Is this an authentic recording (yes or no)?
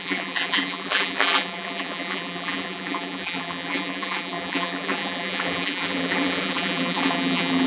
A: no